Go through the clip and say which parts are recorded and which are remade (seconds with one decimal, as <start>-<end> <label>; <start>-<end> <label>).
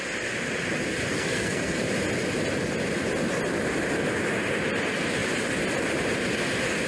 0.0-1.1 recorded; 1.1-1.8 remade; 1.8-6.9 recorded